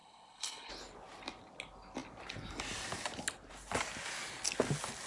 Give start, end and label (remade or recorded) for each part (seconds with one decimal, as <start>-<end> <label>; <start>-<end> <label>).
0.0-0.7 remade; 0.7-5.1 recorded